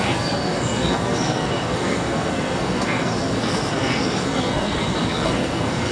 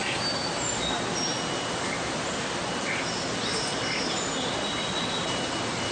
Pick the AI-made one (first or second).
first